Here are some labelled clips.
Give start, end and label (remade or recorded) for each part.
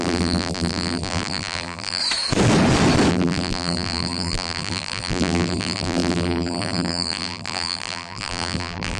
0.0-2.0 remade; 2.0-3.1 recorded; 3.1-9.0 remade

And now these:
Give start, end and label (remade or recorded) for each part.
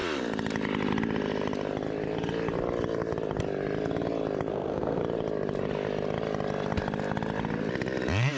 0.0-4.5 recorded; 4.5-5.0 remade; 5.0-8.4 recorded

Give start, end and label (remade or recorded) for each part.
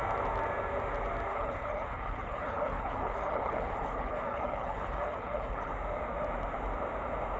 0.0-1.3 recorded; 1.3-5.7 remade; 5.7-7.4 recorded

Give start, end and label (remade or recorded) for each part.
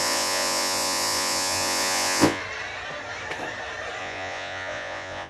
0.0-2.4 remade; 2.4-4.0 recorded; 4.0-5.3 remade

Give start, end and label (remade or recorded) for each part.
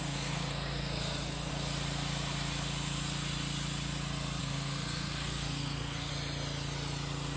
0.0-1.5 remade; 1.5-4.4 recorded; 4.4-6.1 remade; 6.1-7.4 recorded